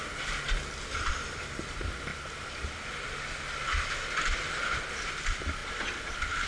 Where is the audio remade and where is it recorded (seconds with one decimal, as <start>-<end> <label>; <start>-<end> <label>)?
0.0-1.1 recorded; 1.1-2.1 remade; 2.1-4.6 recorded; 4.6-5.6 remade; 5.6-6.5 recorded